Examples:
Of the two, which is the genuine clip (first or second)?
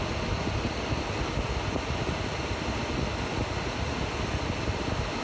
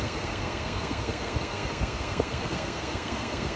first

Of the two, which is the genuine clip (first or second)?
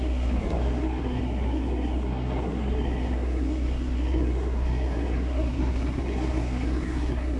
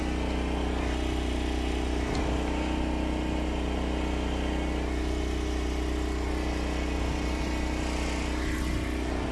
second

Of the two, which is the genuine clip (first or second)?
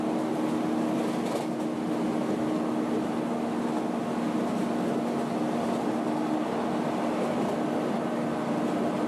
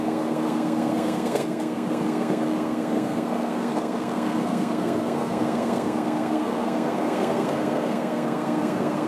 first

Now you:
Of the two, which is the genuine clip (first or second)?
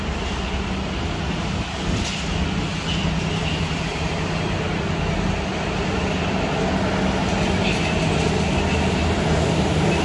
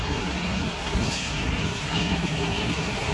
first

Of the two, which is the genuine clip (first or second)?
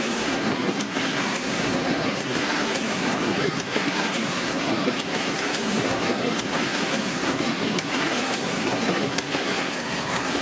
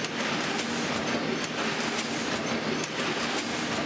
second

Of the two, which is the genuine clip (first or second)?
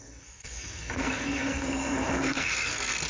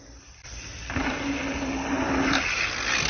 second